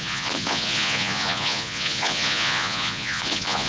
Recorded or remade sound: remade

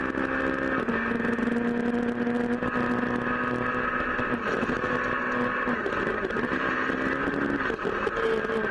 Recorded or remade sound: recorded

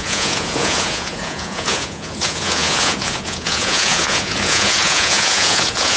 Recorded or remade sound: remade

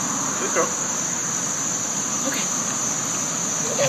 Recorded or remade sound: recorded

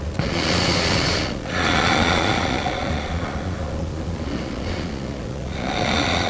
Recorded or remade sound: remade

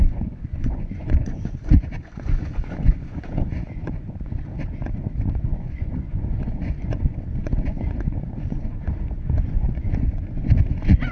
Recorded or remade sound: remade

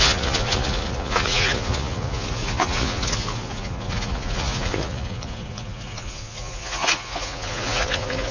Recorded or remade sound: remade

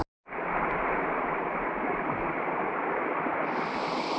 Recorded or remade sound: recorded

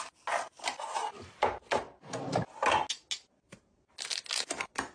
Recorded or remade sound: recorded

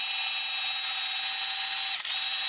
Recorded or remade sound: recorded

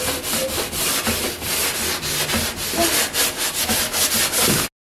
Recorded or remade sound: recorded